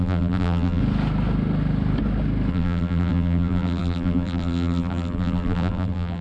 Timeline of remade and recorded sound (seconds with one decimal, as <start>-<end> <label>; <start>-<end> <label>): 0.0-0.8 remade; 0.8-2.5 recorded; 2.5-6.2 remade